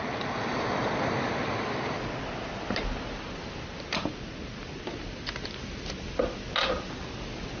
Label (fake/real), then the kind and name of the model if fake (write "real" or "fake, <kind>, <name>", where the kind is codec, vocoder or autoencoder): real